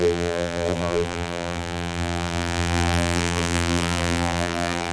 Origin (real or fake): fake